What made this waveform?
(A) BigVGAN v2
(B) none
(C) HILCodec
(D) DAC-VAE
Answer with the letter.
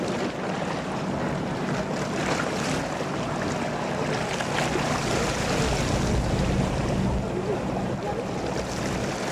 B